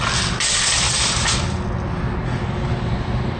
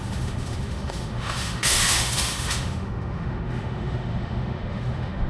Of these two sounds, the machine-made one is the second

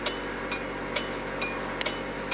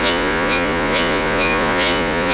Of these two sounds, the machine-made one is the second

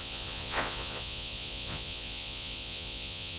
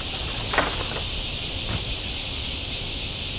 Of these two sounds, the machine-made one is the first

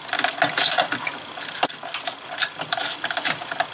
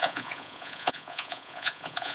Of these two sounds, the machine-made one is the second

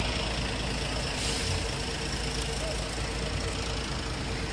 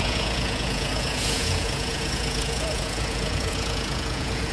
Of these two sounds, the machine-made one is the second